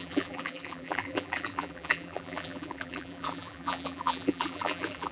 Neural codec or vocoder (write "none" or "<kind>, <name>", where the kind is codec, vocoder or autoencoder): vocoder, BigVGAN v2